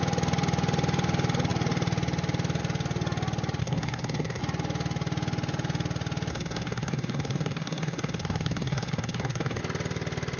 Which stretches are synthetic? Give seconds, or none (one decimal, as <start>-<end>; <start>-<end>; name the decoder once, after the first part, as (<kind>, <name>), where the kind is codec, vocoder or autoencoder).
3.6-4.4 (codec, SNAC); 6.3-9.6